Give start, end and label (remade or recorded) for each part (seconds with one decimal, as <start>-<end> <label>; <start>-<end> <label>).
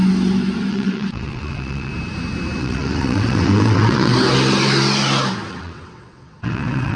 0.0-0.7 recorded; 0.7-1.9 remade; 1.9-2.6 recorded; 2.6-4.1 remade; 4.1-5.5 recorded; 5.5-7.0 remade